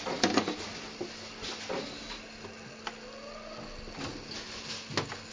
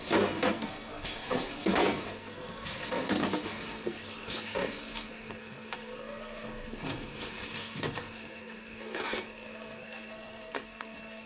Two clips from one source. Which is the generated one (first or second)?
second